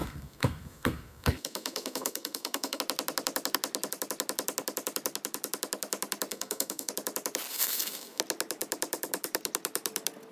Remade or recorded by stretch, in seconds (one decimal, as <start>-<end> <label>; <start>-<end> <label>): 0.0-2.8 remade; 2.8-6.3 recorded; 6.3-6.9 remade; 6.9-7.5 recorded; 7.5-8.2 remade; 8.2-10.3 recorded